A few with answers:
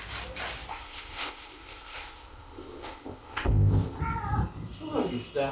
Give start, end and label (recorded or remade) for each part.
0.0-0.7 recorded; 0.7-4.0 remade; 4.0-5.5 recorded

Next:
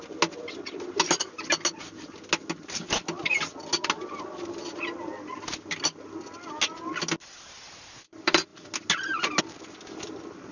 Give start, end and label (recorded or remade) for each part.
0.0-10.5 recorded

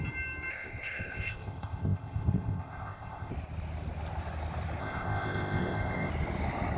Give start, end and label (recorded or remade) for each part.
0.0-0.5 recorded; 0.5-3.3 remade; 3.3-4.8 recorded; 4.8-6.1 remade; 6.1-6.8 recorded

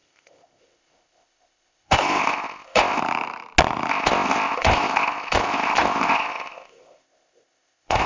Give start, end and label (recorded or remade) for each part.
0.0-3.0 remade; 3.0-3.9 recorded; 3.9-8.1 remade

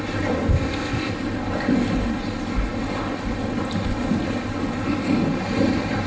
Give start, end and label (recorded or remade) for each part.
0.0-0.5 recorded; 0.5-1.1 remade; 1.1-6.1 recorded

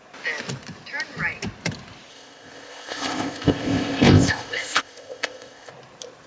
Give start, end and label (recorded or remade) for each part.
0.0-2.1 recorded; 2.1-5.7 remade; 5.7-6.3 recorded